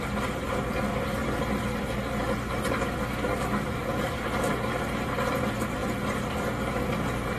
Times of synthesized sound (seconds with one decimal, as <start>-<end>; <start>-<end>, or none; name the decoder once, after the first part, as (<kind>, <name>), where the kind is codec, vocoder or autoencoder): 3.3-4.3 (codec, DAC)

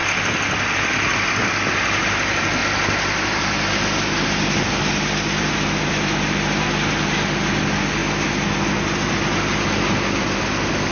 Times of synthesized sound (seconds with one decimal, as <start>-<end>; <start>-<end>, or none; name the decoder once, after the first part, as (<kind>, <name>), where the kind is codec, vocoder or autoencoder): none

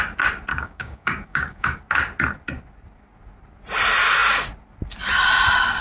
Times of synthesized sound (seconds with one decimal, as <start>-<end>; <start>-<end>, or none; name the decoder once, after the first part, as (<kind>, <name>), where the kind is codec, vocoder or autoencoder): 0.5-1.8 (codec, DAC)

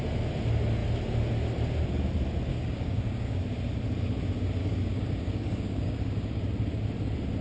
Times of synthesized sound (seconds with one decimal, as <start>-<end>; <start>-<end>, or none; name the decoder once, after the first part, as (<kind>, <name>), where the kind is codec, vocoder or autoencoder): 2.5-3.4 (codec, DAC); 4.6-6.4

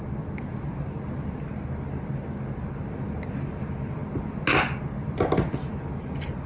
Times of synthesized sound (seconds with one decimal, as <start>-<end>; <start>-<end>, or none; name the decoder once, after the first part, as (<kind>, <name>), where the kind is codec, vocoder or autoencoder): none